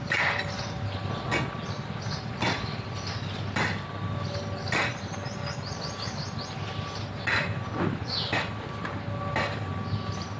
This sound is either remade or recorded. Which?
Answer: recorded